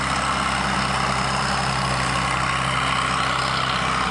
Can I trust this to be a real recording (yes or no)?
yes